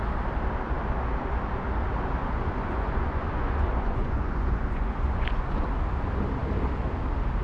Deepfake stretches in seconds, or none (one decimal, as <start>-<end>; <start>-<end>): 2.2-5.7

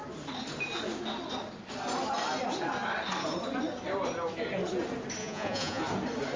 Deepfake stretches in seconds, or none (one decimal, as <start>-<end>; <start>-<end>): 5.2-5.8